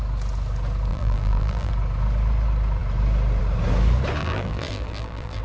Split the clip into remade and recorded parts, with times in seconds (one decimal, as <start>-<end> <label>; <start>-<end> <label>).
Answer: 0.0-0.9 recorded; 0.9-1.7 remade; 1.7-4.2 recorded; 4.2-5.4 remade